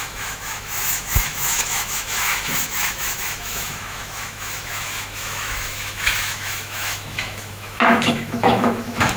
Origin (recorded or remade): remade